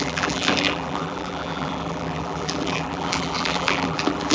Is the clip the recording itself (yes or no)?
no